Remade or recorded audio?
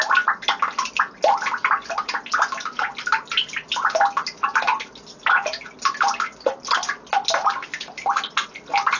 recorded